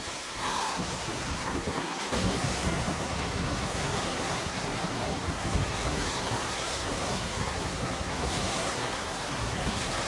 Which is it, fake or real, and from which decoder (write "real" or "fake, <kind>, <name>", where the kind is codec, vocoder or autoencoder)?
fake, codec, SNAC